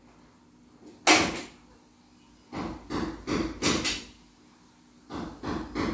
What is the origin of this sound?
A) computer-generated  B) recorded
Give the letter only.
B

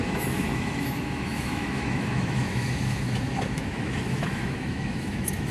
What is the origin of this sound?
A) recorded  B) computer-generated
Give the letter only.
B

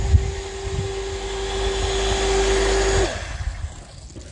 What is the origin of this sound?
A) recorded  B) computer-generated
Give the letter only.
A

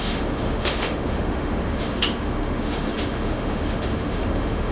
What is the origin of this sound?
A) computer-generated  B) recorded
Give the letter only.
A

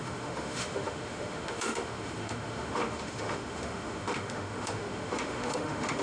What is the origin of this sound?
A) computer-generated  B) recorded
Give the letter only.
A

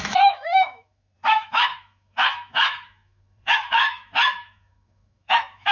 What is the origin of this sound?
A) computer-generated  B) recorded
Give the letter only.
A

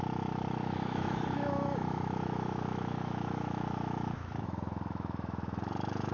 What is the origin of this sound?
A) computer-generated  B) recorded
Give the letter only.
A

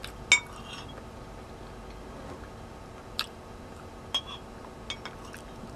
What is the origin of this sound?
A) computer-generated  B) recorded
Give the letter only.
B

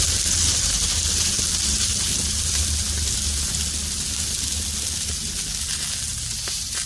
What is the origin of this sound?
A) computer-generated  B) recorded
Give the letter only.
B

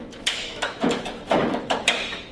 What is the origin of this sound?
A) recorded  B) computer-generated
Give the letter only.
B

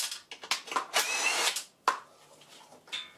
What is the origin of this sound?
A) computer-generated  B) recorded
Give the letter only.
B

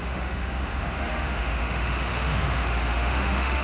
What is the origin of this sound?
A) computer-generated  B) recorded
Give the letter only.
A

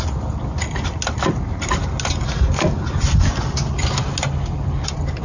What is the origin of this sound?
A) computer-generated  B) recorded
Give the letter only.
B